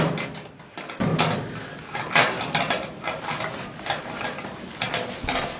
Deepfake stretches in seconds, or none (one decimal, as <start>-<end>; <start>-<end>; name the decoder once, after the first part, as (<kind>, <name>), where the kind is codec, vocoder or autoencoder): none